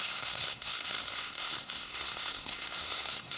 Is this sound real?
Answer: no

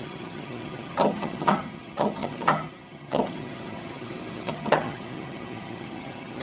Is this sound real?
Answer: no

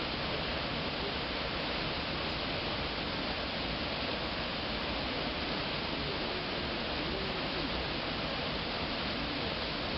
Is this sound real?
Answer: yes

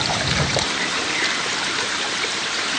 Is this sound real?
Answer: no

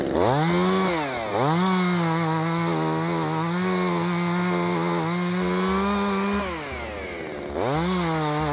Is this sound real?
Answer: yes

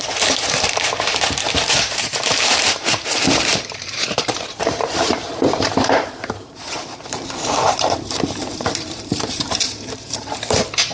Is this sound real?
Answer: no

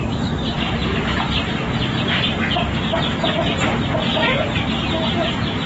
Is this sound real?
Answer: yes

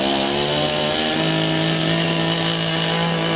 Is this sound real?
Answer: yes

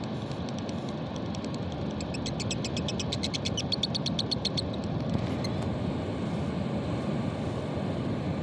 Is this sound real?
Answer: yes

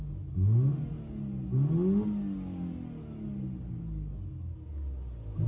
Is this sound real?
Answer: yes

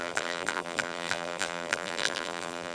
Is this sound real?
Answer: no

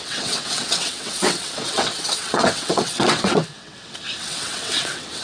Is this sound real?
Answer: no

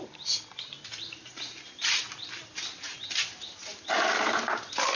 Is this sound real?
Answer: yes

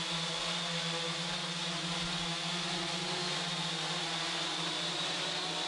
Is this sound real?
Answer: yes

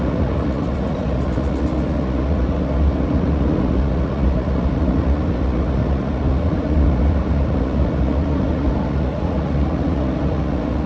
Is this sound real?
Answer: no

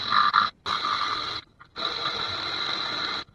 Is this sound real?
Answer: yes